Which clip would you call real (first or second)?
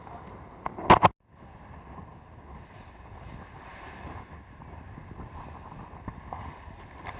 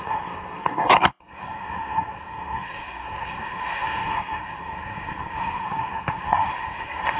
first